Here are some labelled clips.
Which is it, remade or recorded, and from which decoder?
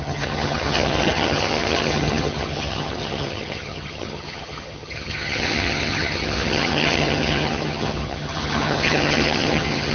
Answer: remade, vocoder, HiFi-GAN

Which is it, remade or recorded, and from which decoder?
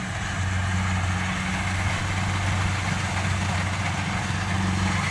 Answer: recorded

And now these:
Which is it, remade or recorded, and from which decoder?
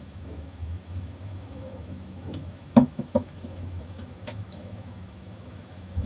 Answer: remade, autoencoder, DAC-VAE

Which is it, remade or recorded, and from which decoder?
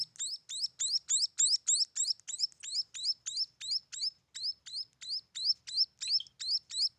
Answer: recorded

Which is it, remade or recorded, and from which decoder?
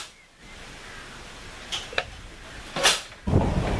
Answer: recorded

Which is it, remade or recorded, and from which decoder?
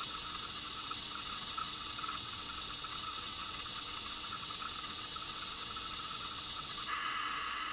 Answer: remade, vocoder, WaveNeXt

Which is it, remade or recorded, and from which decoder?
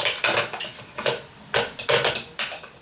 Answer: recorded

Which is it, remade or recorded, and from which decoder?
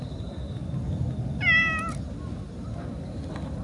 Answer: recorded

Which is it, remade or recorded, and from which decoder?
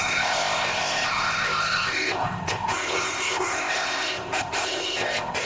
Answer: remade, codec, ZipCodec